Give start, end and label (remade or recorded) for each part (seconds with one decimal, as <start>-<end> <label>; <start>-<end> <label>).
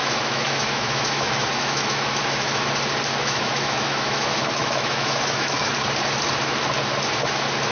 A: 0.0-2.7 remade; 2.7-3.1 recorded; 3.1-5.7 remade; 5.7-7.7 recorded